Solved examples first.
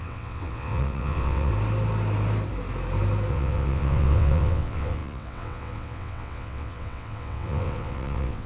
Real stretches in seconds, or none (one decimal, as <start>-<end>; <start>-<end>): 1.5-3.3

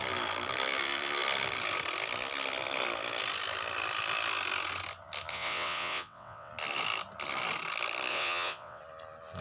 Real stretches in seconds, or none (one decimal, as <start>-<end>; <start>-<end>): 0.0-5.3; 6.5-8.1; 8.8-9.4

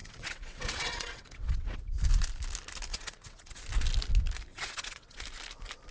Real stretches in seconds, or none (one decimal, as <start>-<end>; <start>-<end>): 1.8-2.9; 3.6-4.5; 5.2-5.9